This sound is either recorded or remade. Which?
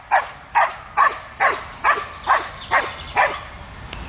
recorded